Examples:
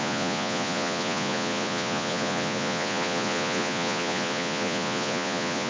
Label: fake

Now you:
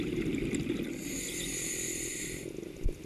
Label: real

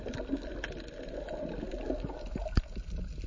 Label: real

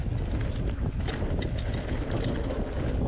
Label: real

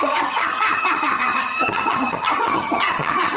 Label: fake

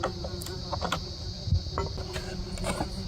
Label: real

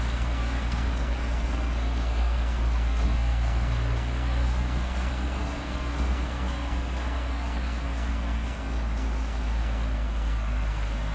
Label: fake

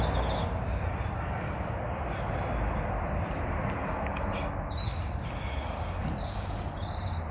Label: real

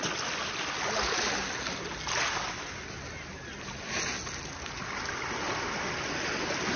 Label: real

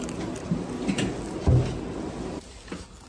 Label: real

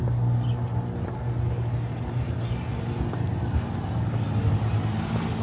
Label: real